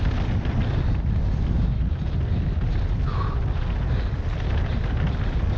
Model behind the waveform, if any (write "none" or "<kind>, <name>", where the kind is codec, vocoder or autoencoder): none